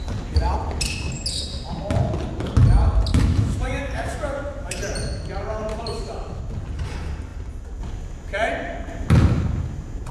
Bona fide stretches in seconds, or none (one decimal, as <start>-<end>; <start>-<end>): 0.0-3.1; 4.8-5.7; 6.4-10.1